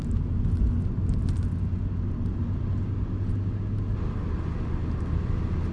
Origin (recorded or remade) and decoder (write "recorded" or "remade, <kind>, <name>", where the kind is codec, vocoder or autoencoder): recorded